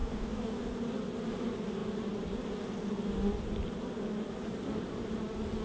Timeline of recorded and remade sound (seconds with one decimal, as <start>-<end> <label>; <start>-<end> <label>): 0.0-0.6 remade; 0.6-5.6 recorded